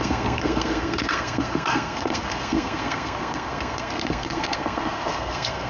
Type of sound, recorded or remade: remade